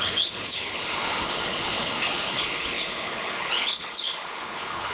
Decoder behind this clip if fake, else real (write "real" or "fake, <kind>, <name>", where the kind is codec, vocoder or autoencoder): fake, codec, HILCodec